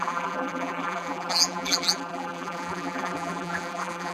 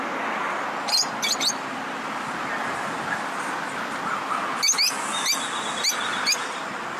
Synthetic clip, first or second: first